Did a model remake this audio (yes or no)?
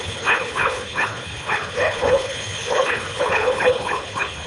yes